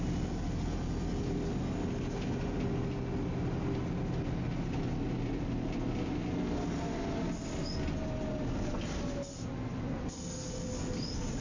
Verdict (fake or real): real